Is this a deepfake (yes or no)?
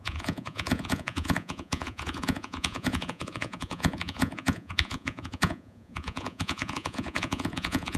yes